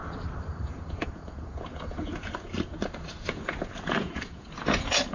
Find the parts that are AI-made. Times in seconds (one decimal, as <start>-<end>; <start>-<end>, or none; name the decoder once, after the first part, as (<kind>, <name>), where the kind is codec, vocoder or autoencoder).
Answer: 0.6-5.1 (vocoder, Vocos)